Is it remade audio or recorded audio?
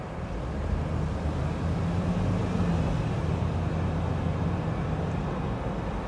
recorded